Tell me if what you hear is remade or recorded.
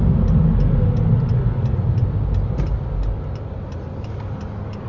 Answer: recorded